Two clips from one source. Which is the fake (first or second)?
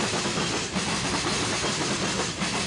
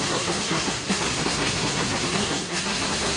second